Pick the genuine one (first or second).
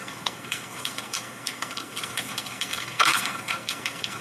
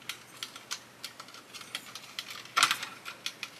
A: second